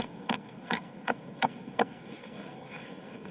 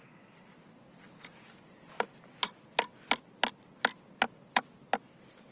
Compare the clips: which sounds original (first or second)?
second